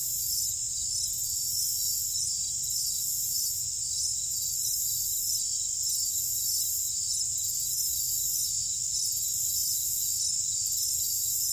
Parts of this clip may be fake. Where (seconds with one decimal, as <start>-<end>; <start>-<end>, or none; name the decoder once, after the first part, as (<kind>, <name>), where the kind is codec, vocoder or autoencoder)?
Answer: none

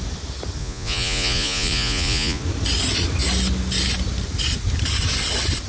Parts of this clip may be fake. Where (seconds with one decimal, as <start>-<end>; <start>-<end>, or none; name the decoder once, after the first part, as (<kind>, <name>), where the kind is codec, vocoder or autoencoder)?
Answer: 0.6-2.4 (vocoder, Vocos)

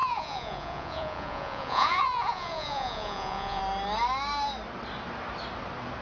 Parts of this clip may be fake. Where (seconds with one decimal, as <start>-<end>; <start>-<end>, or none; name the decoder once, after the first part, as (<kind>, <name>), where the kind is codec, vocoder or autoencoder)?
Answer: 0.0-3.6 (vocoder, Vocos)

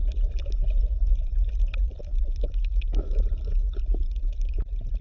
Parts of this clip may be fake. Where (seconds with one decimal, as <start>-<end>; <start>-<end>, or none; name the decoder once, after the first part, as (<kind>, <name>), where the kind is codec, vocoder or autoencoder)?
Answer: 0.0-1.1 (vocoder, BigVGAN v2); 1.8-3.5

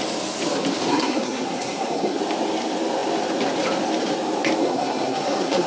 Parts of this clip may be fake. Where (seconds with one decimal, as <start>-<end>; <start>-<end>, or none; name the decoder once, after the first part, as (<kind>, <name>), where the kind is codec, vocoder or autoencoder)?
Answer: 0.9-2.2 (codec, SNAC); 4.6-5.7

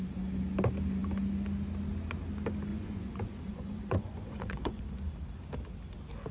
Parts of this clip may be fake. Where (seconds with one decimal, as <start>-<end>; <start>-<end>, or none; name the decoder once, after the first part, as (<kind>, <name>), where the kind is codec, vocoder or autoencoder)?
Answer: 2.7-4.8 (vocoder, Vocos)

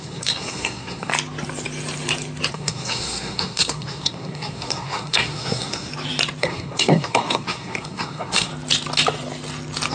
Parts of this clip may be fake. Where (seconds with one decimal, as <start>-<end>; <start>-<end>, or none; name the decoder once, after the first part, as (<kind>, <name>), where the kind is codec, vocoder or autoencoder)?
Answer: 0.0-1.1 (codec, SNAC); 2.5-5.9; 6.4-8.5